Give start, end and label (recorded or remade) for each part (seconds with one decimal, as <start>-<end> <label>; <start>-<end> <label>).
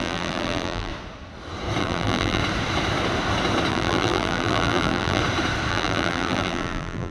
0.0-0.9 remade; 0.9-1.8 recorded; 1.8-2.4 remade; 2.4-3.7 recorded; 3.7-5.2 remade; 5.2-5.7 recorded; 5.7-7.1 remade